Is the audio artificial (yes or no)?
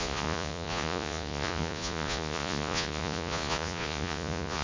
yes